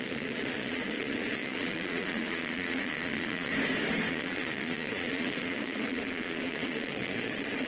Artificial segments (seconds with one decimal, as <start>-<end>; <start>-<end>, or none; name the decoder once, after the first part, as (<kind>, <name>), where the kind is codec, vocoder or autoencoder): 0.0-3.5 (vocoder, Vocos); 4.1-7.7